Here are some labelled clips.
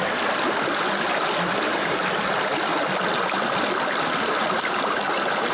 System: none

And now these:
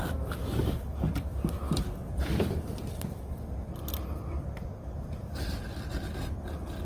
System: none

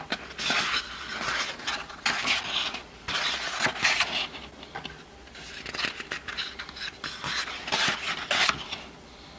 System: none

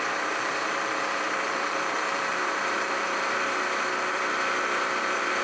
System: vocoder, BigVGAN v2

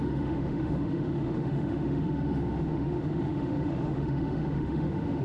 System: autoencoder, DAC-VAE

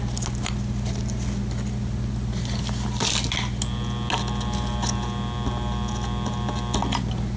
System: none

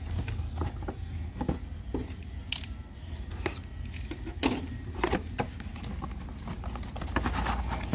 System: none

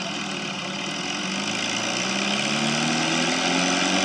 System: none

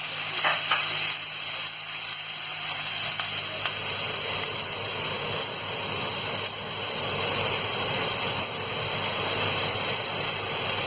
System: none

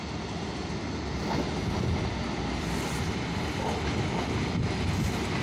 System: none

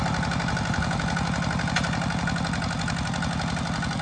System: none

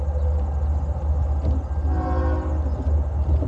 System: none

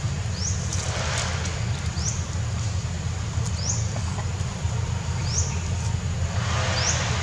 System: none